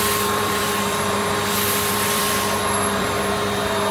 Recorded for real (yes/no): no